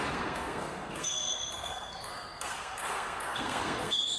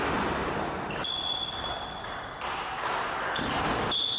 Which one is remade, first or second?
first